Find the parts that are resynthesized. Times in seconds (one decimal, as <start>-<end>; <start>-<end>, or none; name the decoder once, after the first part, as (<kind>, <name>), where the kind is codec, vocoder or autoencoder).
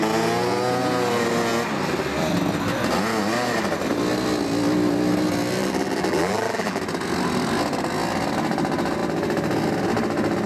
5.6-6.8 (vocoder, BigVGAN v2)